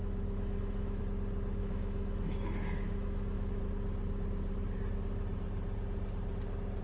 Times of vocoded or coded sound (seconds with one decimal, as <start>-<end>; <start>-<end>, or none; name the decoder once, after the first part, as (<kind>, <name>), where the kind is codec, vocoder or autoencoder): 0.0-1.0 (autoencoder, DAC-VAE); 1.6-3.6